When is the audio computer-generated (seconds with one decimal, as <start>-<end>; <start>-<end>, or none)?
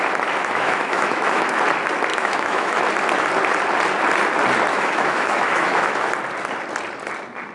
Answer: 0.4-1.6; 2.1-2.8; 4.7-6.1